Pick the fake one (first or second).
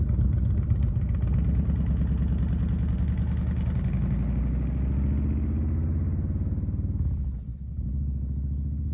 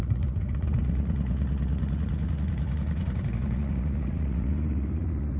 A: second